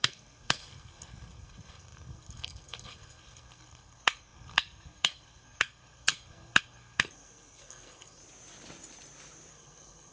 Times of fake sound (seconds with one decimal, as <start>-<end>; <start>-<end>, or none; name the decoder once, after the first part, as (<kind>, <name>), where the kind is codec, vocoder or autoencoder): 0.0-8.2 (codec, SNAC); 9.5-10.1